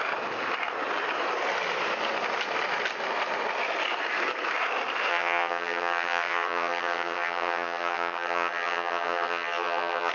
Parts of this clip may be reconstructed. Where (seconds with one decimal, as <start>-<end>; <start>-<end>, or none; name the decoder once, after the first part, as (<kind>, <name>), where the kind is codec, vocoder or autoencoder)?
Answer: 5.1-10.1 (vocoder, HiFi-GAN)